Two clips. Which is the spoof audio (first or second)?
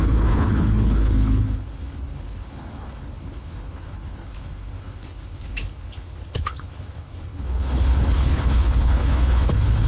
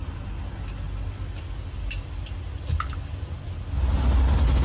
first